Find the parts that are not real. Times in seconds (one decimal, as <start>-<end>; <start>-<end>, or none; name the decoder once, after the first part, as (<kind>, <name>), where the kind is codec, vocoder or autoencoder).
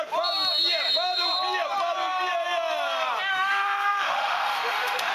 3.3-5.1 (autoencoder, DAC-VAE)